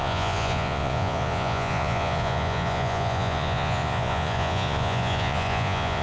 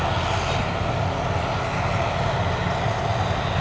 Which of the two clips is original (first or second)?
second